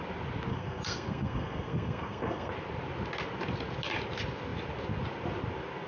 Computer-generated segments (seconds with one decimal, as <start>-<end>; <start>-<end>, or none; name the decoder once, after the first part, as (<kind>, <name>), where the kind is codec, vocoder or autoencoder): 0.5-2.5 (codec, SNAC)